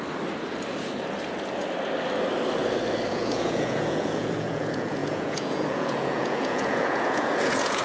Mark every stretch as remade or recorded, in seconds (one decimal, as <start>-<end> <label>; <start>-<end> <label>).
0.0-3.1 recorded; 3.1-7.8 remade